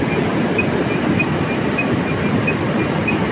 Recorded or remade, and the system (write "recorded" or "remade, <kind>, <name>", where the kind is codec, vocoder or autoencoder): recorded